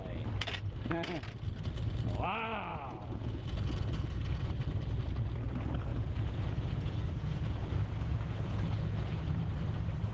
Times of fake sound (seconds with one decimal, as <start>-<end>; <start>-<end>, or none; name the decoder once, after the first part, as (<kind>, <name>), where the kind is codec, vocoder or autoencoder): 2.7-4.5 (vocoder, Vocos); 5.9-9.4